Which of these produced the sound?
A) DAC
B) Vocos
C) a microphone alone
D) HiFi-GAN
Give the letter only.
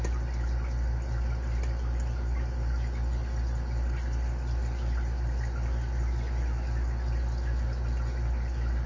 C